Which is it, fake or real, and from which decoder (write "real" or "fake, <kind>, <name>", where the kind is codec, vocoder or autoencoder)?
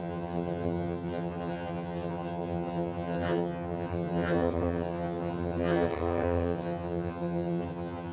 fake, vocoder, HiFi-GAN